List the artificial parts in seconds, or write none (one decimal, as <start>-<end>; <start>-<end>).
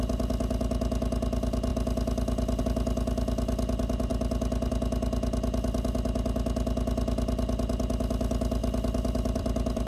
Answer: 8.6-9.9